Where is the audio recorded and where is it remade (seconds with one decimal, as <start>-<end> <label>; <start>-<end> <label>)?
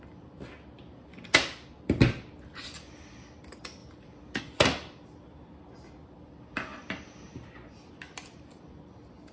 0.0-3.8 recorded; 3.8-4.4 remade; 4.4-6.7 recorded; 6.7-7.9 remade; 7.9-9.3 recorded